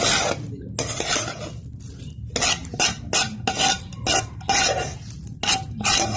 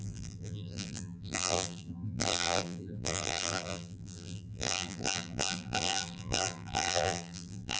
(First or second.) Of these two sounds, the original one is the first